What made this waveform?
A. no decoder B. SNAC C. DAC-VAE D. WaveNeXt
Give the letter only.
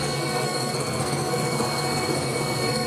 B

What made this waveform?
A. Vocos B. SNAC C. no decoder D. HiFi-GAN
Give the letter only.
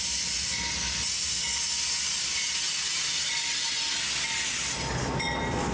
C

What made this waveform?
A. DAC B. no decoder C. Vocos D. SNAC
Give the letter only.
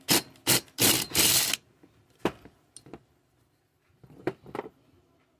B